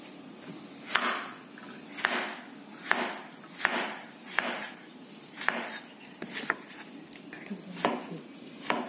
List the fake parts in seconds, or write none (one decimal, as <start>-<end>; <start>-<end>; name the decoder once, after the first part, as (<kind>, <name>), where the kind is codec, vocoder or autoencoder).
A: 3.7-6.8 (vocoder, BigVGAN v2)